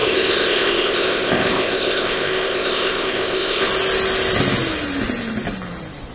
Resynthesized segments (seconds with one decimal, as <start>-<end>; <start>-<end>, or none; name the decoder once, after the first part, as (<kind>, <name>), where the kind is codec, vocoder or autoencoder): 0.0-3.7 (codec, ZipCodec)